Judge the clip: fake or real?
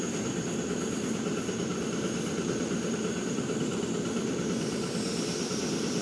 fake